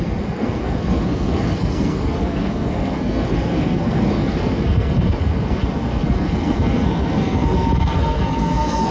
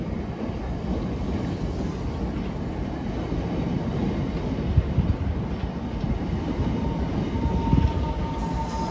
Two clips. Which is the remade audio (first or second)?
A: first